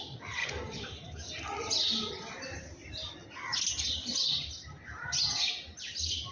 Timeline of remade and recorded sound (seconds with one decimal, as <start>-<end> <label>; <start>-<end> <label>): 0.0-0.4 recorded; 0.4-1.3 remade; 1.3-6.3 recorded